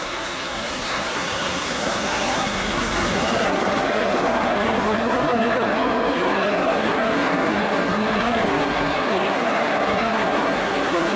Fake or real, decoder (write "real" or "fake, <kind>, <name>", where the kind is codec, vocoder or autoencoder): fake, codec, SNAC